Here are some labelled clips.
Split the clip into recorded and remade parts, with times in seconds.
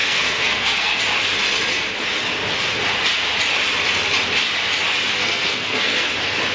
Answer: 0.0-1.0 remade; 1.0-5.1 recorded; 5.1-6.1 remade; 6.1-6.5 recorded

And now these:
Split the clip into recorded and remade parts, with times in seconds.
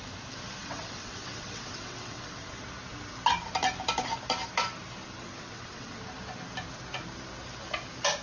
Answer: 0.0-0.6 recorded; 0.6-2.5 remade; 2.5-5.3 recorded; 5.3-6.0 remade; 6.0-8.2 recorded